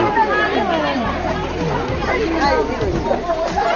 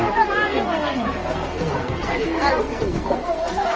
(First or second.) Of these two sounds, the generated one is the second